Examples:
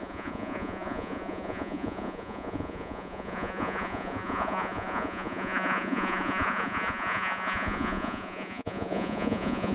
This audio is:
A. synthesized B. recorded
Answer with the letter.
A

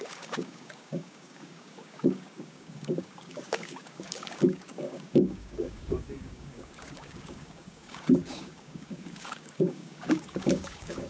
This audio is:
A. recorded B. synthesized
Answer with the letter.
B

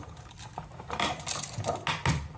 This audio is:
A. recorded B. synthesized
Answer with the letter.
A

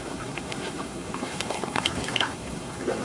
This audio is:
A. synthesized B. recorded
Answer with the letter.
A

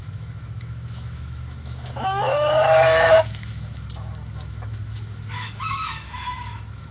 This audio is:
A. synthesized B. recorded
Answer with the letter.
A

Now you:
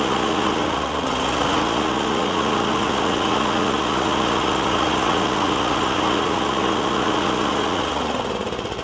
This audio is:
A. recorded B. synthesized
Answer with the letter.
B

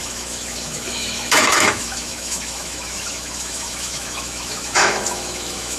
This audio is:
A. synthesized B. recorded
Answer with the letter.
A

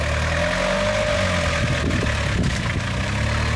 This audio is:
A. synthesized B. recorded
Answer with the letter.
B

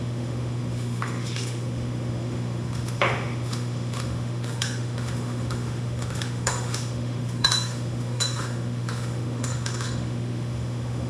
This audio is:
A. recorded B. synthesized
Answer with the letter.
B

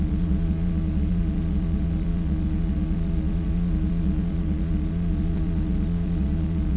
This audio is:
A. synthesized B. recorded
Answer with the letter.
A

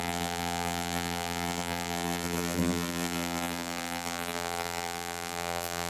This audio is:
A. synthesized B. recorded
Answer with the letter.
A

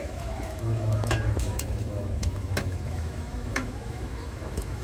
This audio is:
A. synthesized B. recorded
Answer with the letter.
A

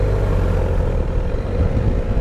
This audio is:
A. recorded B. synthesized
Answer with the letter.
A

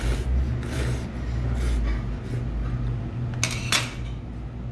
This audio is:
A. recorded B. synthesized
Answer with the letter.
A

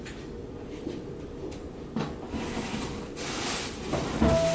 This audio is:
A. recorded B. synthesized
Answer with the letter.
A